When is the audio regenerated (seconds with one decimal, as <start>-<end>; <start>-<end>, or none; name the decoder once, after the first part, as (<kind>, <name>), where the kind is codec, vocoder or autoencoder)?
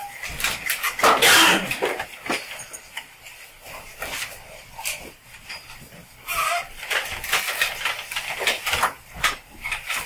2.9-10.1 (vocoder, BigVGAN v2)